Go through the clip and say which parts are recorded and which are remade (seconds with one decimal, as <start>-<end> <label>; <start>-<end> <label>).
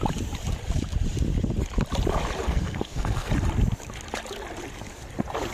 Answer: 0.0-2.4 recorded; 2.4-3.3 remade; 3.3-5.5 recorded